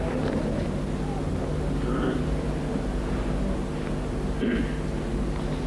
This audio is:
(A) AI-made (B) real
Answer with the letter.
B